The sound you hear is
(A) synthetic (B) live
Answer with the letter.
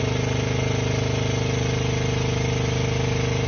B